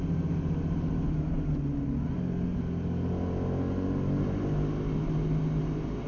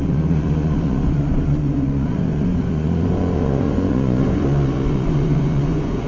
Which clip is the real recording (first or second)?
first